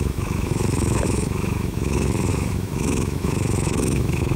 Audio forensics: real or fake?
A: fake